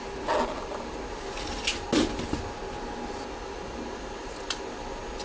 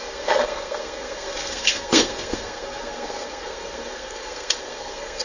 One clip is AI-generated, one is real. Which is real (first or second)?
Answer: first